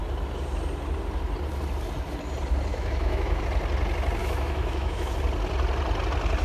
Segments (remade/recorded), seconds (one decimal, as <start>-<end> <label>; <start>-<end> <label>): 0.0-2.7 recorded; 2.7-3.4 remade; 3.4-4.2 recorded; 4.2-5.1 remade; 5.1-6.4 recorded